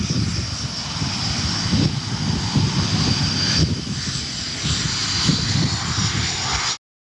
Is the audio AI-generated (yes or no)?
no